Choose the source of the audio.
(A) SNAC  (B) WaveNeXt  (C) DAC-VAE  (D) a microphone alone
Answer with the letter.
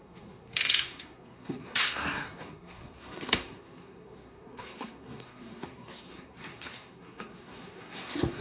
A